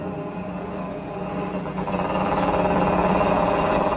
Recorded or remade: recorded